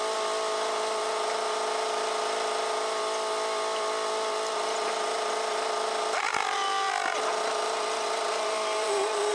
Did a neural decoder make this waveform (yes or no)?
no